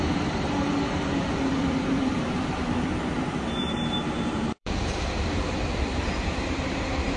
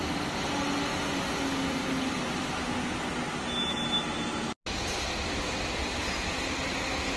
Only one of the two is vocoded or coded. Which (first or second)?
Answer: first